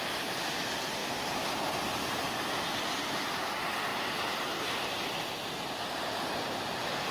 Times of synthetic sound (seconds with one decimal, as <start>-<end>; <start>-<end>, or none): none